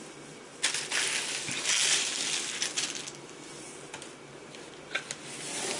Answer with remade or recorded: recorded